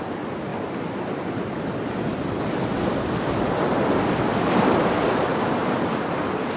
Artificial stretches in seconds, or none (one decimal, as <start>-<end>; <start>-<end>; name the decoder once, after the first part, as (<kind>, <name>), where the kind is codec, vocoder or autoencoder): none